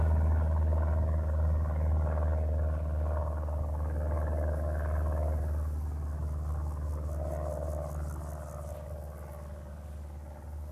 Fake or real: real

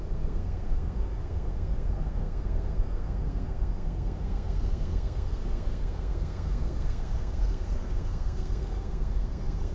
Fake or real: fake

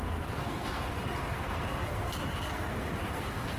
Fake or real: fake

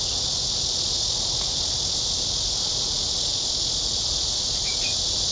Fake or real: real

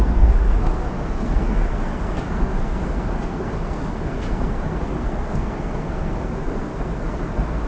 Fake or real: fake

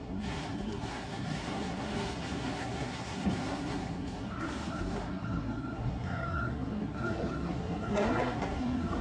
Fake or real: fake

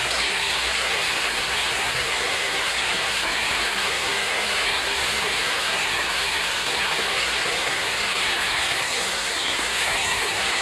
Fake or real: fake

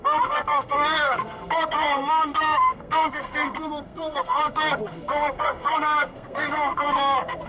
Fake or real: fake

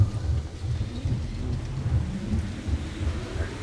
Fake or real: real